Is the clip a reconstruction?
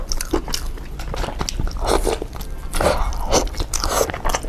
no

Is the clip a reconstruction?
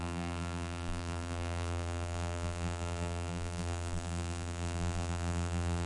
yes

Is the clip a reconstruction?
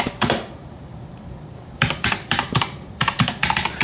yes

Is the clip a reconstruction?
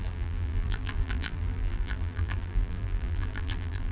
yes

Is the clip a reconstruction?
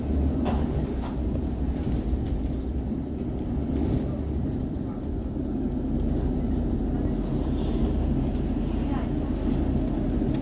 no